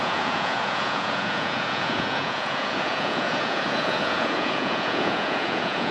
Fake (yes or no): yes